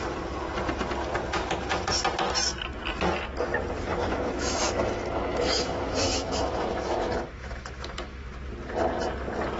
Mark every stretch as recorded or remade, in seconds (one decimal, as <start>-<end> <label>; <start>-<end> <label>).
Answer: 0.0-3.9 recorded; 3.9-8.3 remade; 8.3-9.6 recorded